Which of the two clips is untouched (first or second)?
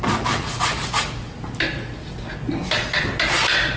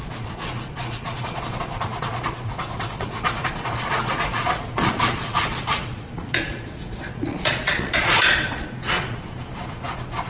first